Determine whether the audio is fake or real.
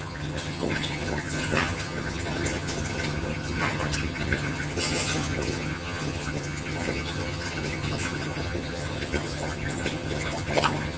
fake